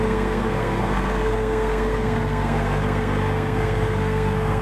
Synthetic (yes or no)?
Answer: yes